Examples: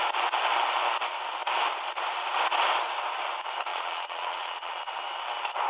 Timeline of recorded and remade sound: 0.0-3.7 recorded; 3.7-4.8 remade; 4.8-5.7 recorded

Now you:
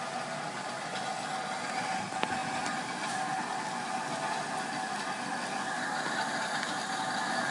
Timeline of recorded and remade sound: 0.0-7.5 recorded

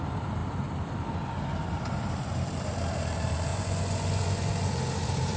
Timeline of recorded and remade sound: 0.0-3.5 recorded; 3.5-4.7 remade; 4.7-5.4 recorded